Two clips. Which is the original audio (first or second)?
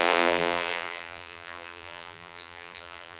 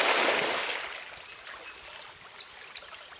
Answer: second